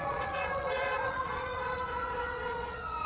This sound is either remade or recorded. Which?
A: remade